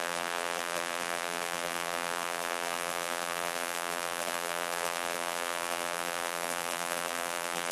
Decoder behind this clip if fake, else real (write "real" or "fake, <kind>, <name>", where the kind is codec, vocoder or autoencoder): fake, vocoder, BigVGAN v2